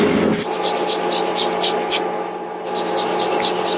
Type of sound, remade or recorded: recorded